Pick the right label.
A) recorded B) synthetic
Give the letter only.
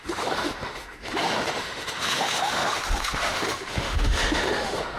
B